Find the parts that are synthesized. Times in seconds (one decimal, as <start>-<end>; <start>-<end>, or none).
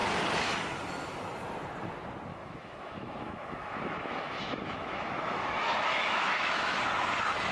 2.3-6.8